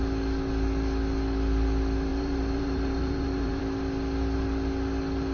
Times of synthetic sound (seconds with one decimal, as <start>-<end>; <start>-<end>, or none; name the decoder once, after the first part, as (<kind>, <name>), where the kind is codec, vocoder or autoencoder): 2.1-3.6 (vocoder, BigVGAN v2)